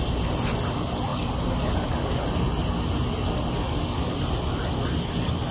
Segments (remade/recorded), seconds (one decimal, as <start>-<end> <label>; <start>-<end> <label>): 0.0-5.5 recorded

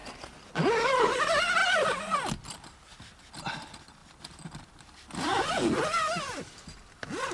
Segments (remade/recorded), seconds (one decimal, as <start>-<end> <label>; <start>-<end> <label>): 0.0-7.3 recorded

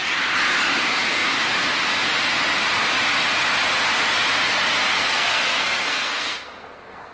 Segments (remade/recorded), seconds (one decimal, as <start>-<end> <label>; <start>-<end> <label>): 0.0-4.9 recorded; 4.9-7.1 remade

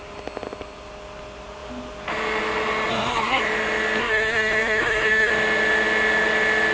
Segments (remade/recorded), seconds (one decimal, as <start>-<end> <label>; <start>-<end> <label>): 0.0-2.9 recorded; 2.9-3.4 remade; 3.4-4.0 recorded; 4.0-5.3 remade; 5.3-6.7 recorded

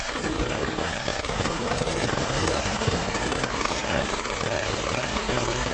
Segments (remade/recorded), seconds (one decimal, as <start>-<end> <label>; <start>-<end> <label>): 0.0-5.7 remade

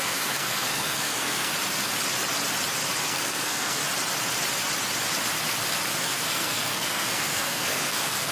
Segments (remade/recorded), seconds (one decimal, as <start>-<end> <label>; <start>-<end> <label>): 0.0-1.5 remade; 1.5-3.0 recorded; 3.0-3.8 remade; 3.8-6.0 recorded; 6.0-8.3 remade

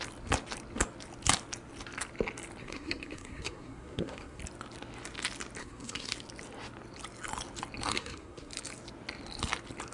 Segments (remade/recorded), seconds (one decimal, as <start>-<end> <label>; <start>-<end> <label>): 0.0-2.6 recorded; 2.6-4.4 remade; 4.4-5.6 recorded; 5.6-6.1 remade; 6.1-7.9 recorded; 7.9-8.5 remade; 8.5-9.9 recorded

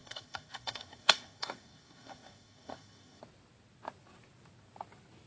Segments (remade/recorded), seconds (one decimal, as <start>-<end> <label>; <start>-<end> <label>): 0.0-3.2 remade; 3.2-5.3 recorded